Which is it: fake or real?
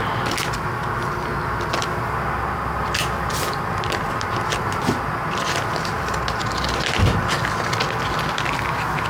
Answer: real